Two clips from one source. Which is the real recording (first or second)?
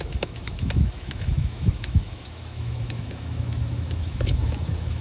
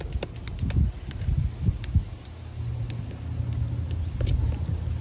second